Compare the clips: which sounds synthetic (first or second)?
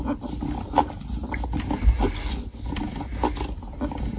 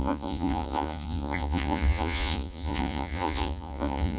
second